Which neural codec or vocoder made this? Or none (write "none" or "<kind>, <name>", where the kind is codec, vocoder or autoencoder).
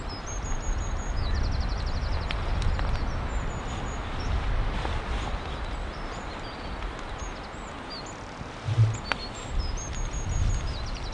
none